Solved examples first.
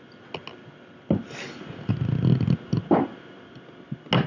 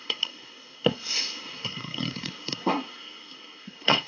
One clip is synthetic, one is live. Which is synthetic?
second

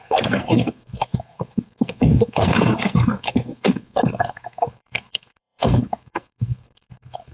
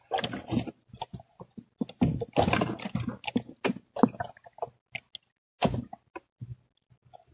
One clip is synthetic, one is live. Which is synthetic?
first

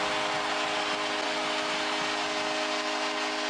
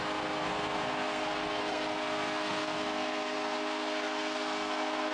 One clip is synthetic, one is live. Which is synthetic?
second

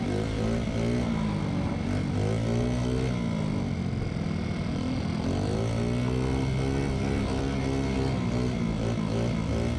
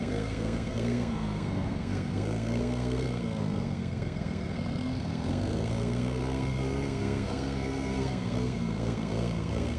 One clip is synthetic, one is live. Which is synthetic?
second